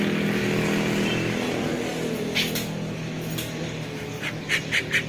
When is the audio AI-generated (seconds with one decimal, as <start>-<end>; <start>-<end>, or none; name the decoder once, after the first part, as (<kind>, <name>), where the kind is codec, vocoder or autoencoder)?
none